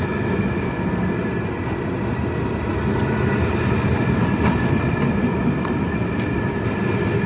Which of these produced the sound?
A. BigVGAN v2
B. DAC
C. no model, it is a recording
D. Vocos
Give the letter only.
C